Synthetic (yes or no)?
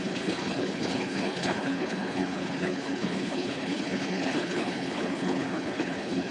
yes